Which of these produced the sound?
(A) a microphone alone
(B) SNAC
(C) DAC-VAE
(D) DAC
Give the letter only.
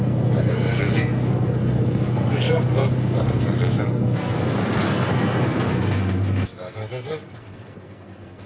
B